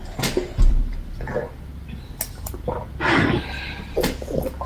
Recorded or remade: recorded